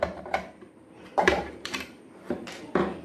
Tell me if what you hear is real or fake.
fake